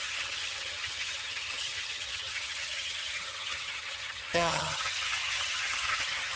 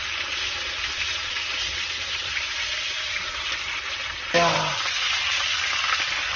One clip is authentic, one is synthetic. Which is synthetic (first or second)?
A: first